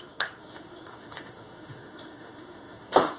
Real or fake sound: fake